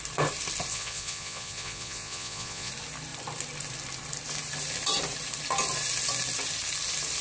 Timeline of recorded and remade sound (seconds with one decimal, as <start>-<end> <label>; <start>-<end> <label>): 0.0-0.7 recorded; 0.7-2.7 remade; 2.7-7.2 recorded

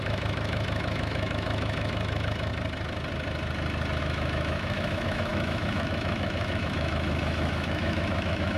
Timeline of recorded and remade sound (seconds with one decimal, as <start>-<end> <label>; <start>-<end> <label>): 0.0-2.5 remade; 2.5-4.0 recorded; 4.0-8.6 remade

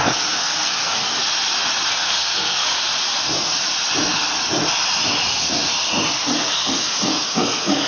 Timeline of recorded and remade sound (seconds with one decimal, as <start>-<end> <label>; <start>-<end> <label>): 0.0-1.0 remade; 1.0-1.9 recorded; 1.9-2.8 remade; 2.8-6.2 recorded; 6.2-7.9 remade

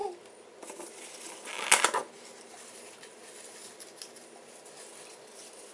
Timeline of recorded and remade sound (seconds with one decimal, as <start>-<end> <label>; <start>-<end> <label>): 0.0-5.7 recorded

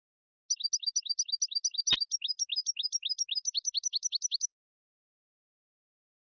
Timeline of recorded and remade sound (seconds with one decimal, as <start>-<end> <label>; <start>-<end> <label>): 0.0-6.4 recorded

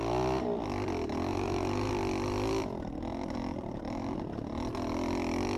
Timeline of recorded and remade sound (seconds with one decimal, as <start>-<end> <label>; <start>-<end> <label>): 0.0-1.3 recorded; 1.3-1.9 remade; 1.9-3.1 recorded; 3.1-4.4 remade; 4.4-5.6 recorded

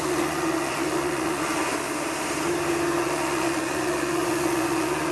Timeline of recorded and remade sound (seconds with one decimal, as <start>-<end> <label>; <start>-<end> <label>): 0.0-1.6 remade; 1.6-3.0 recorded; 3.0-5.1 remade